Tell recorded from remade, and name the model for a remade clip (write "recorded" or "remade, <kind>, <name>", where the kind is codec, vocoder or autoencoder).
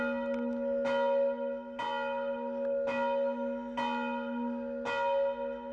recorded